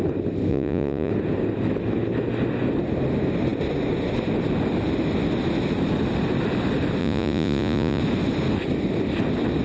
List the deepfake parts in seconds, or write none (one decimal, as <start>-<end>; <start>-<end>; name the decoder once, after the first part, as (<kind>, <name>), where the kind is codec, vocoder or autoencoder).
0.5-1.1 (vocoder, Vocos); 7.0-8.0